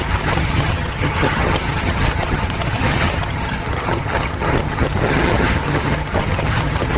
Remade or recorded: remade